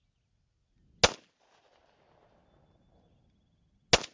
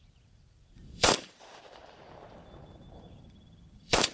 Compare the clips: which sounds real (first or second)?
first